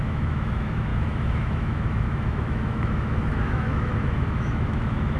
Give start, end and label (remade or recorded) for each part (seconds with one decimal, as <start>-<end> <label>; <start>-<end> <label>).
0.0-5.2 remade